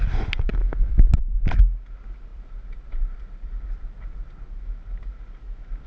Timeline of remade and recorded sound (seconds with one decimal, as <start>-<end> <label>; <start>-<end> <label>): 0.0-2.3 recorded; 2.3-5.1 remade; 5.1-5.9 recorded